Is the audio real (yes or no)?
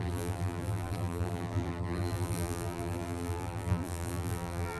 no